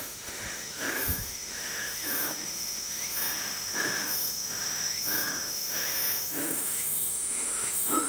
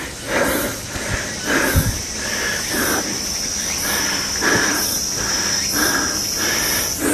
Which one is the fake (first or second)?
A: first